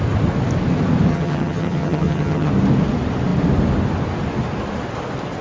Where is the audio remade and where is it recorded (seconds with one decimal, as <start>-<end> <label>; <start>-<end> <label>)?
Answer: 0.0-1.1 recorded; 1.1-2.5 remade; 2.5-5.4 recorded